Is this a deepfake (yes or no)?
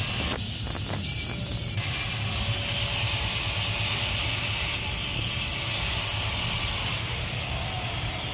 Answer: no